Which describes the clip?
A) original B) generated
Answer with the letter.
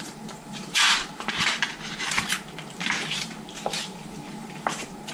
B